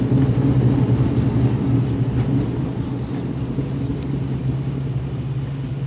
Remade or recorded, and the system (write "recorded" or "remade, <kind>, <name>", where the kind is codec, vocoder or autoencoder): recorded